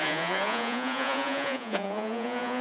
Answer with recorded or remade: remade